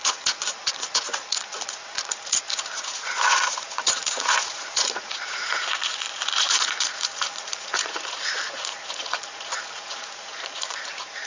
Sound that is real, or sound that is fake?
fake